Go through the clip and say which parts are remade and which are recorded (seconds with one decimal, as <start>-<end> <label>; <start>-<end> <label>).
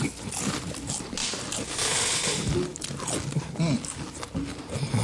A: 0.0-5.0 recorded